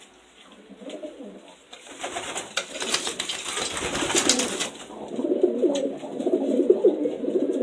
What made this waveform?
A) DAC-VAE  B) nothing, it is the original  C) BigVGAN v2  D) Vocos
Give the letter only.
B